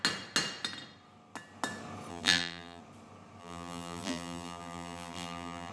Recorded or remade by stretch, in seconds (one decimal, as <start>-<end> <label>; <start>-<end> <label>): 0.0-2.1 recorded; 2.1-2.8 remade; 2.8-3.4 recorded; 3.4-5.7 remade